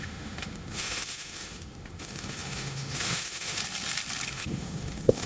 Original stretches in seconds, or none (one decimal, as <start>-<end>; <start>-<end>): 3.6-4.3